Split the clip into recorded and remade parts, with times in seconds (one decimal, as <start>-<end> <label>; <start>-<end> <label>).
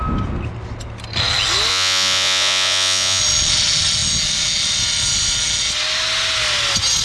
0.0-1.7 recorded; 1.7-3.2 remade; 3.2-7.0 recorded